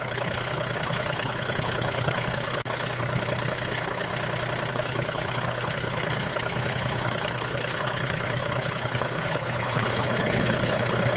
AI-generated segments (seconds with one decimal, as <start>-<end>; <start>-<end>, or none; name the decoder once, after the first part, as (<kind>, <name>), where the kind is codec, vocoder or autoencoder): 0.0-4.1 (codec, HILCodec); 4.7-11.2